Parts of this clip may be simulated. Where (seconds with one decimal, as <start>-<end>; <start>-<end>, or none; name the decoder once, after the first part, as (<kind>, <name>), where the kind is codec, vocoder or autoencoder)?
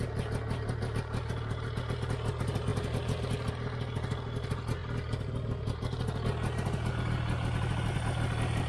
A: none